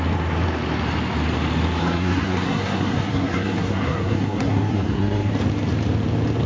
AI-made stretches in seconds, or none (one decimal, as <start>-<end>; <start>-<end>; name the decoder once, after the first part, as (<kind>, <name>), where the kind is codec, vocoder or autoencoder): 1.8-5.3 (codec, SNAC)